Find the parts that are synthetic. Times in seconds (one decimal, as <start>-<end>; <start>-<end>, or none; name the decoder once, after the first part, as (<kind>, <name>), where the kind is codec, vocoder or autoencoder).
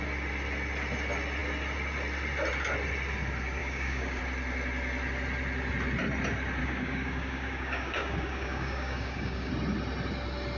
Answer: 3.6-4.2 (codec, DAC); 6.6-9.5